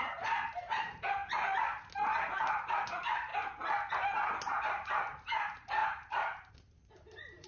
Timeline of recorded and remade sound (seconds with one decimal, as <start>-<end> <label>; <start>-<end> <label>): 0.0-1.2 remade; 1.2-2.7 recorded; 2.7-3.3 remade; 3.3-4.7 recorded; 4.7-7.5 remade